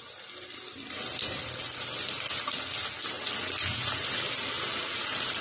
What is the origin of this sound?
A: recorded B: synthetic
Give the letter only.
A